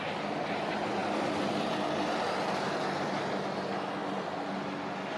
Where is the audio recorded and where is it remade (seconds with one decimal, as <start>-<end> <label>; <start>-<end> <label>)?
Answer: 0.0-5.2 recorded